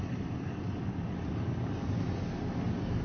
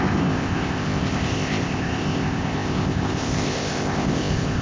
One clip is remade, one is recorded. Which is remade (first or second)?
second